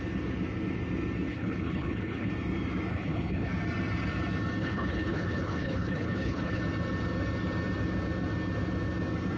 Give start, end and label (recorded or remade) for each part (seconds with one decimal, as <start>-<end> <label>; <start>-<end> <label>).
0.0-1.3 recorded; 1.3-2.3 remade; 2.3-2.9 recorded; 2.9-3.5 remade; 3.5-4.6 recorded; 4.6-6.6 remade; 6.6-9.4 recorded